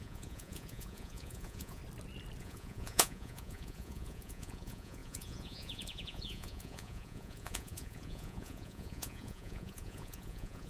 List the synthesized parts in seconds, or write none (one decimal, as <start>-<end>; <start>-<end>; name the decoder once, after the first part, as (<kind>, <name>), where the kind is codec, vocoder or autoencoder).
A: 0.0-1.8 (vocoder, Vocos); 2.4-10.7